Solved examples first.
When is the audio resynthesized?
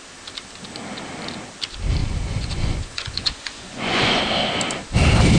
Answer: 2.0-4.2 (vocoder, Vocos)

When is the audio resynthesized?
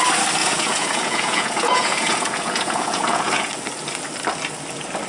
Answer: 0.4-3.5 (vocoder, Vocos)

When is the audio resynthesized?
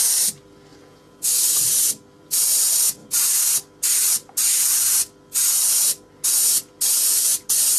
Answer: 0.7-1.3 (vocoder, Vocos)